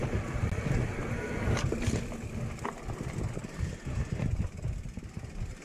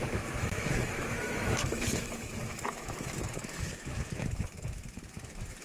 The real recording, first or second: first